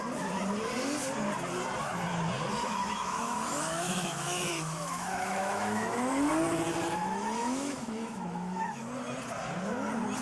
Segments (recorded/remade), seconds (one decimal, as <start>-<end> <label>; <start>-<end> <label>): 0.0-2.6 recorded; 2.6-6.3 remade; 6.3-7.0 recorded; 7.0-8.9 remade; 8.9-10.2 recorded